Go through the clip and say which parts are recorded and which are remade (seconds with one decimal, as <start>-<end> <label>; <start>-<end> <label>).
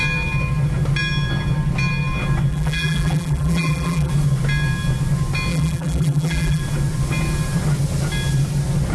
0.0-2.5 recorded; 2.5-4.1 remade; 4.1-5.5 recorded; 5.5-6.6 remade; 6.6-8.9 recorded